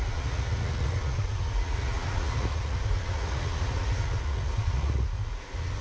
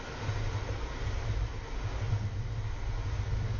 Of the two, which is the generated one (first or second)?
first